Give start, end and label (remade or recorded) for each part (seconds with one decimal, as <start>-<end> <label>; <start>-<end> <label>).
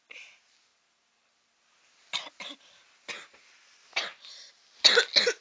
0.0-5.4 recorded